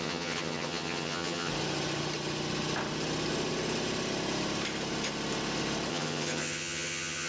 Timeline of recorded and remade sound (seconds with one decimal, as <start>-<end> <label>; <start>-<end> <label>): 0.0-1.5 remade; 1.5-5.9 recorded; 5.9-7.3 remade